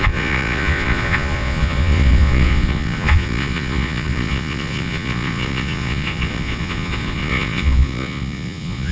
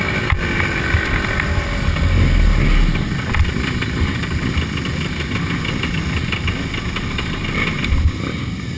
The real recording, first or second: second